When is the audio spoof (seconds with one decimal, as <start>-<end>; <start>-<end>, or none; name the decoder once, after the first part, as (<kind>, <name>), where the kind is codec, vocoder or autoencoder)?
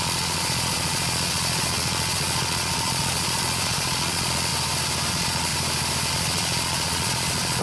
0.0-4.5 (vocoder, Vocos); 5.1-5.5; 6.1-7.6